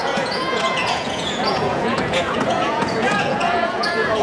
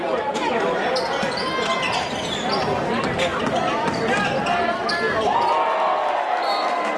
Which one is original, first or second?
second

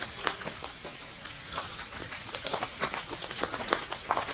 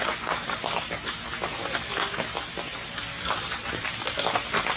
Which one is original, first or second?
second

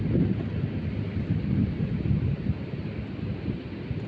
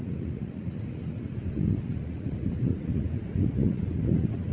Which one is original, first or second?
first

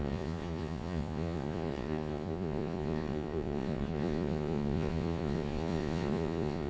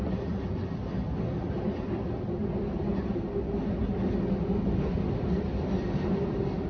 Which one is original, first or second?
second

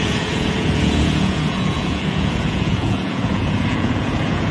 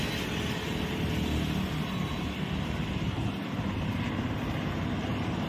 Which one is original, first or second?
second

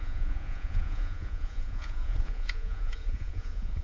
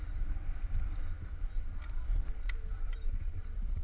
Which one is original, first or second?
second